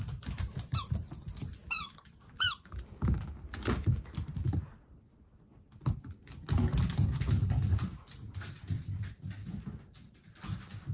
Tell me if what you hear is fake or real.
real